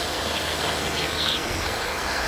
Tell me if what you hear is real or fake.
fake